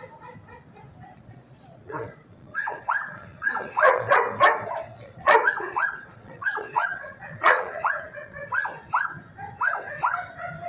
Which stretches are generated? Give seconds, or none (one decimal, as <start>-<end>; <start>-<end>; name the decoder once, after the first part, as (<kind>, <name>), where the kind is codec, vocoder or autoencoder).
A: 1.1-4.2 (vocoder, Vocos); 4.9-8.5

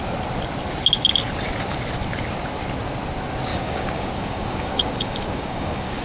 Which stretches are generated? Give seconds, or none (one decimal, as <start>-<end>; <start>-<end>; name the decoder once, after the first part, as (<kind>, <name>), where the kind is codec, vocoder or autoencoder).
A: 3.5-6.0 (codec, DAC)

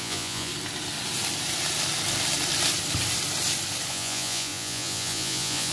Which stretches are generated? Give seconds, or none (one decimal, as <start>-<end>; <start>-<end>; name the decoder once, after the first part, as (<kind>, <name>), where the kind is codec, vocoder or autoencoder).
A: 0.0-0.5 (vocoder, Vocos); 3.9-5.7